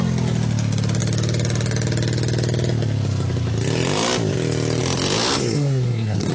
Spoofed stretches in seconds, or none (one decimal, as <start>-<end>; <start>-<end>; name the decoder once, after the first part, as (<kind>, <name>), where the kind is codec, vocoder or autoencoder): 5.4-6.3 (codec, SNAC)